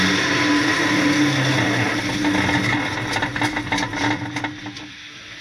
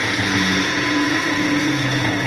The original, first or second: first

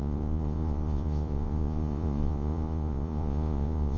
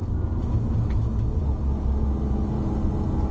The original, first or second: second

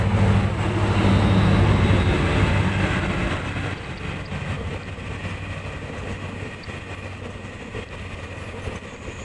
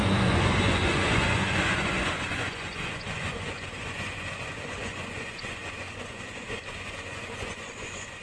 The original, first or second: first